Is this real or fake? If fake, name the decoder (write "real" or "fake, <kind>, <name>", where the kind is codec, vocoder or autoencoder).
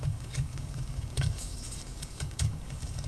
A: fake, codec, DAC